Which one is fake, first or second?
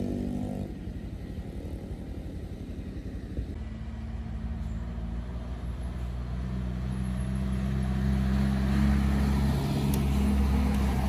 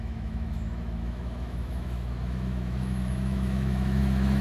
second